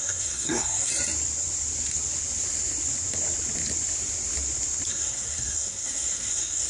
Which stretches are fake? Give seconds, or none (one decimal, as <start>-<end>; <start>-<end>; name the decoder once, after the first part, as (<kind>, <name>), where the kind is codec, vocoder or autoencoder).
0.0-0.9 (codec, SNAC); 4.9-6.7